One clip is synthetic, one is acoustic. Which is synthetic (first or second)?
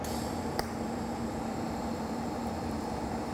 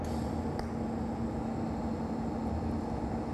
first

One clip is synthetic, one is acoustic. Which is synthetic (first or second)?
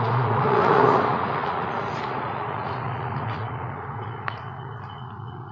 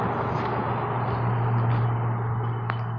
first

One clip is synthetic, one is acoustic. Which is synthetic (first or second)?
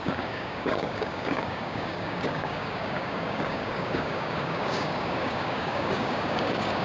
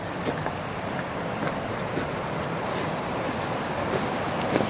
first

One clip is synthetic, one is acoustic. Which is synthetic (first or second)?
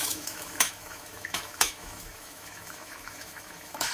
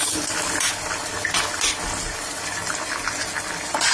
first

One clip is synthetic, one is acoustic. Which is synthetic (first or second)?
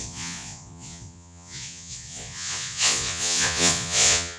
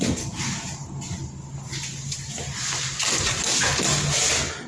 first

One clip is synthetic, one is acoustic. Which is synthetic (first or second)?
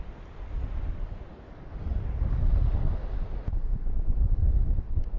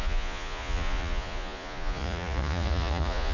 second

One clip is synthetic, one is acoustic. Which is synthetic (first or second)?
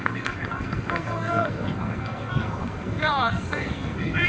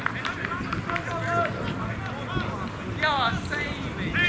first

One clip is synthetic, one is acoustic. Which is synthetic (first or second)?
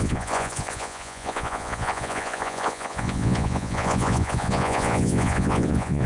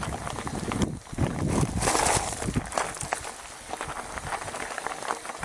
first